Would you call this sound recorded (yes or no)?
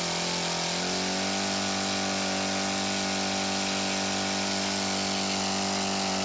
yes